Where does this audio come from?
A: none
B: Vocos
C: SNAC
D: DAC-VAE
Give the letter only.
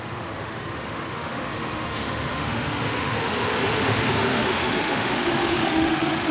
D